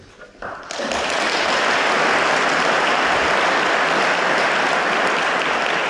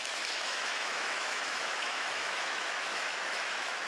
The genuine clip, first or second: first